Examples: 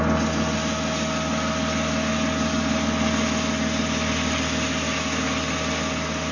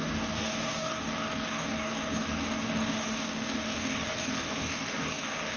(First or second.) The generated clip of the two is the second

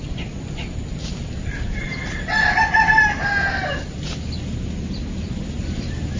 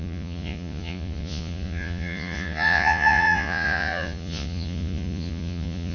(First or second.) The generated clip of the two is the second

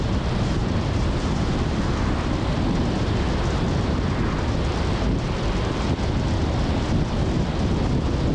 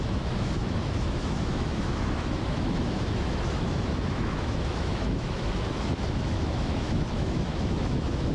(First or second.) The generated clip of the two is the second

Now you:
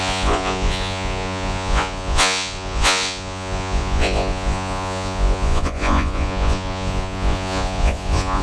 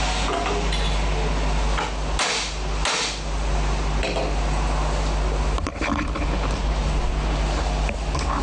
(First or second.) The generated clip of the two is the first